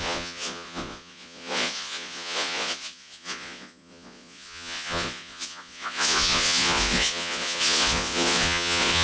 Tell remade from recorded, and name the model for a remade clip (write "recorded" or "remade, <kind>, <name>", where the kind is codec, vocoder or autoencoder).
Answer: remade, vocoder, Vocos